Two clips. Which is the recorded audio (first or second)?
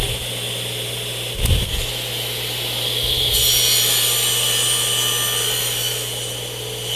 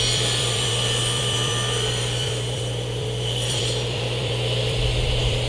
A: first